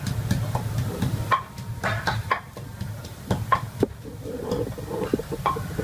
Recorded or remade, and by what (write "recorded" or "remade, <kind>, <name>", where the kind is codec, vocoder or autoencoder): recorded